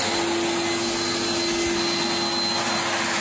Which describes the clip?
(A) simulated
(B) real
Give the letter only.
B